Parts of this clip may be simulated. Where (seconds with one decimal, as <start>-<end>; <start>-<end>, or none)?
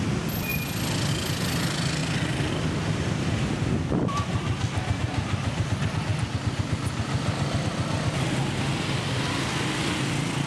none